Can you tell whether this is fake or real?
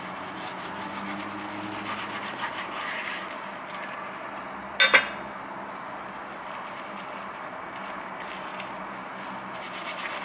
real